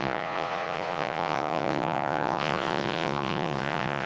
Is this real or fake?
fake